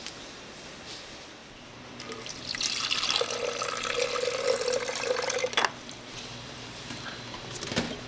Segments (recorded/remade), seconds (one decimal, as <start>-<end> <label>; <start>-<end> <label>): 0.0-8.1 recorded